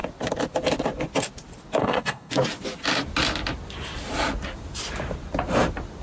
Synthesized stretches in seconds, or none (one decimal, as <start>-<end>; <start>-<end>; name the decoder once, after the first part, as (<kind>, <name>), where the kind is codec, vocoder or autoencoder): 1.8-2.3 (codec, DAC)